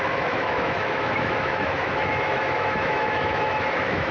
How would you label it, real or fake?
fake